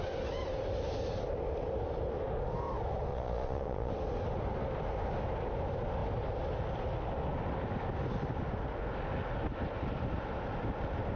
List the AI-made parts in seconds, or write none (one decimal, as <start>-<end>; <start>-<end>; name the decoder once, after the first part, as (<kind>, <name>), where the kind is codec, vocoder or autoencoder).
3.1-3.9 (vocoder, Vocos)